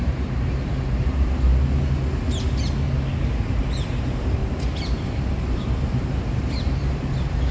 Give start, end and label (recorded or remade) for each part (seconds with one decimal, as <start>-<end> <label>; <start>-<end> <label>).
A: 0.0-1.5 remade; 1.5-3.5 recorded; 3.5-4.4 remade; 4.4-5.4 recorded; 5.4-7.5 remade